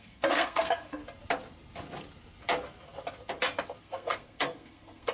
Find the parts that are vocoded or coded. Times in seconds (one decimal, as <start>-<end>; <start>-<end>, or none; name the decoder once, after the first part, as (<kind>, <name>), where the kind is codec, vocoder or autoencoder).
0.0-1.0 (codec, SNAC); 3.8-5.1